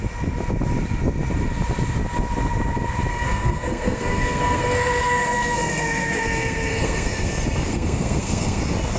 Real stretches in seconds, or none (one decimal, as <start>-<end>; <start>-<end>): 0.0-3.1; 7.3-7.7; 8.6-9.0